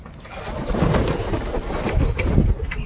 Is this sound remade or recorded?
recorded